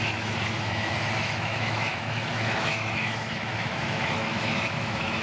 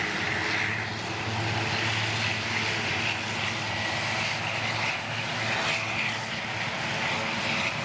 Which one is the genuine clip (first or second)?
second